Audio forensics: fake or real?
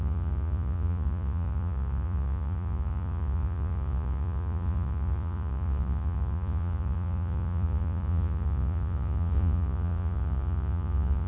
fake